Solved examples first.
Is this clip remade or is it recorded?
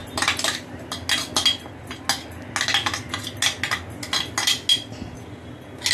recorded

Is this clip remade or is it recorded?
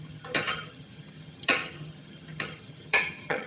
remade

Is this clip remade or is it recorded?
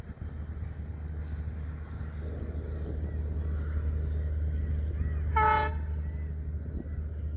recorded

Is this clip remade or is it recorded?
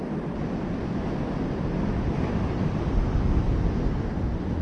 recorded